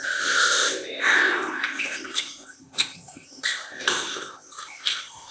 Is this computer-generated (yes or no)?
yes